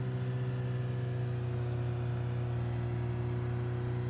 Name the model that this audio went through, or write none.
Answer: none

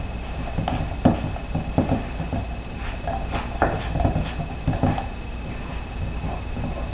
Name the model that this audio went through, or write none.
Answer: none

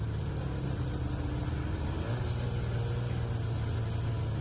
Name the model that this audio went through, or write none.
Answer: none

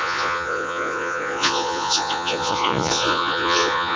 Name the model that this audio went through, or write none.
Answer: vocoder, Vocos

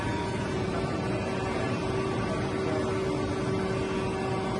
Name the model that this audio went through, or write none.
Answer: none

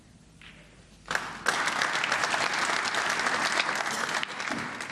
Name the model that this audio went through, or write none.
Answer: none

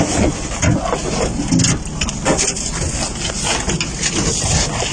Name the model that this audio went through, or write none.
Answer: none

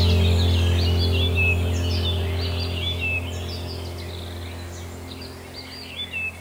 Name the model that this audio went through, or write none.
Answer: none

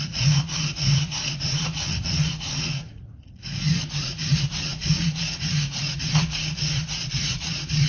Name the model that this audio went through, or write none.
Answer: vocoder, Vocos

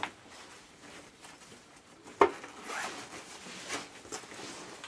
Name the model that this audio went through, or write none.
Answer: none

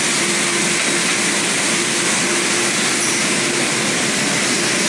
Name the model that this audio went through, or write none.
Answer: none